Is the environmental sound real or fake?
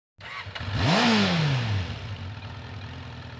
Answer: real